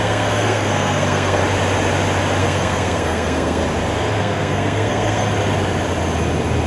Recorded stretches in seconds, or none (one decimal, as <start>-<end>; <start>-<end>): 1.4-2.4; 3.6-4.2; 5.2-6.7